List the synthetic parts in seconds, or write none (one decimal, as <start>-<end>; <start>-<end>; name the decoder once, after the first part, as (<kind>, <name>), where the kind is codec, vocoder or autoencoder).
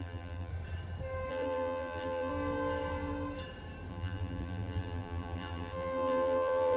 0.0-0.5 (vocoder, BigVGAN v2); 1.3-2.3; 3.9-6.8